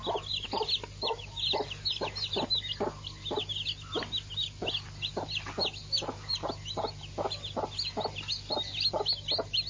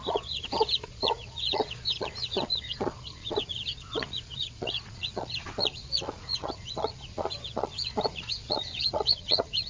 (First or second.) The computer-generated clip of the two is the second